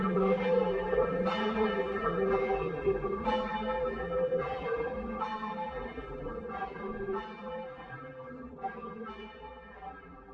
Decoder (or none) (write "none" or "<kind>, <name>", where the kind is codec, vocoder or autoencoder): vocoder, BigVGAN v2